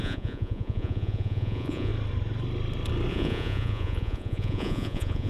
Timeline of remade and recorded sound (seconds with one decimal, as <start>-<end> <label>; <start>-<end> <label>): 0.0-1.9 remade; 1.9-3.1 recorded; 3.1-5.3 remade